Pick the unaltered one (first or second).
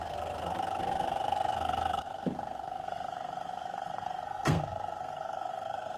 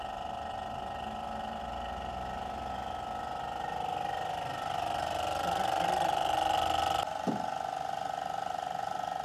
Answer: second